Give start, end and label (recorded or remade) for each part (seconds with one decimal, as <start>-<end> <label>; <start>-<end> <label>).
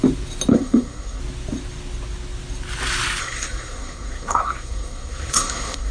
0.0-0.5 recorded; 0.5-1.2 remade; 1.2-3.2 recorded; 3.2-5.9 remade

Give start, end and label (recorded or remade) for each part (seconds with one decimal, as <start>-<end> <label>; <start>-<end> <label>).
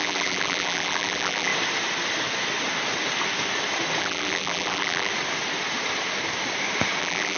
0.0-1.5 remade; 1.5-4.0 recorded; 4.0-5.1 remade; 5.1-7.0 recorded; 7.0-7.4 remade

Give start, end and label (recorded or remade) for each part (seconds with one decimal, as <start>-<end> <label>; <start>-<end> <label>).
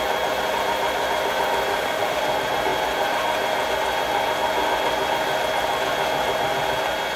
0.0-1.7 recorded; 1.7-2.2 remade; 2.2-7.2 recorded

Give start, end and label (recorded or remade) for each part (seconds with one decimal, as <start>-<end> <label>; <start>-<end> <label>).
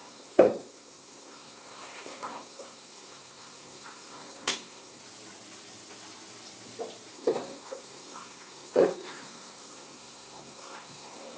0.0-5.0 remade; 5.0-7.1 recorded; 7.1-11.4 remade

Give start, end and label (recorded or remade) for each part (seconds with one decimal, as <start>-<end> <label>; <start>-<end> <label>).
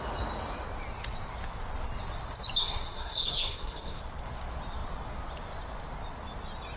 0.0-2.6 recorded; 2.6-4.0 remade; 4.0-6.8 recorded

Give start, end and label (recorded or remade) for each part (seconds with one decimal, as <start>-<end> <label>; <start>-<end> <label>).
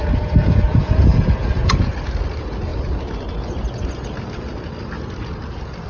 0.0-1.9 remade; 1.9-5.9 recorded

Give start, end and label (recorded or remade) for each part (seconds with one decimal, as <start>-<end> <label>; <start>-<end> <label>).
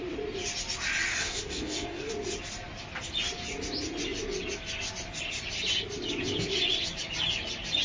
0.0-1.1 recorded; 1.1-2.1 remade; 2.1-7.8 recorded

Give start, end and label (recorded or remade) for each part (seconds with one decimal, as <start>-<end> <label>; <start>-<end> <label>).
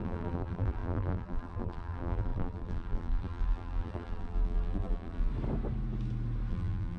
0.0-5.3 remade; 5.3-6.5 recorded; 6.5-7.0 remade